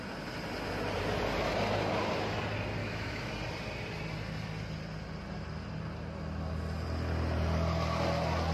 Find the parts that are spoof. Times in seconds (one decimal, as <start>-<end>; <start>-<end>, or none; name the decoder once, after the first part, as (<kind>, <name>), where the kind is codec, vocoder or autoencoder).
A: 2.8-3.3 (autoencoder, DAC-VAE)